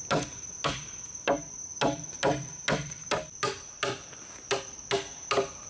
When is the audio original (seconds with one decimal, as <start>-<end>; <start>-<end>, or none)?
0.0-5.7